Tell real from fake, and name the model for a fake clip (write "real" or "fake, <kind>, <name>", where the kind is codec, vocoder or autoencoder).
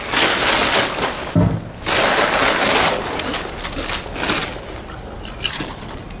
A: real